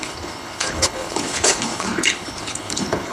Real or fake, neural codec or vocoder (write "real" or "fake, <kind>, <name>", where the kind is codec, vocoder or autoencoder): fake, codec, HILCodec